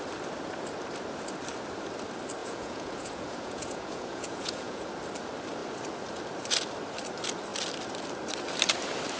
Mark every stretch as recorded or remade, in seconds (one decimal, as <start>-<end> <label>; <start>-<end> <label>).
0.0-2.4 recorded; 2.4-4.8 remade; 4.8-9.2 recorded